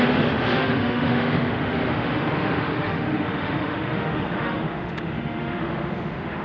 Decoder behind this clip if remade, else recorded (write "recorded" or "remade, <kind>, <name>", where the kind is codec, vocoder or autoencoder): remade, autoencoder, DAC-VAE